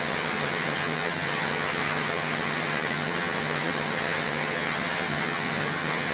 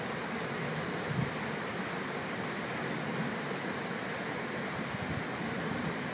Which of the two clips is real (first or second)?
second